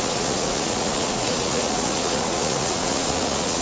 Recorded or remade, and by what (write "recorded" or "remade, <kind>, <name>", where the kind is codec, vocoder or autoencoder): remade, vocoder, Vocos